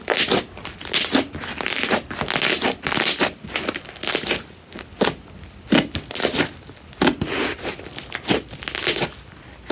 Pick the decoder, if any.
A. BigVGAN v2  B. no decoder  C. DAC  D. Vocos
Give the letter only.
B